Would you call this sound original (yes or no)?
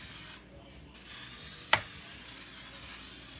yes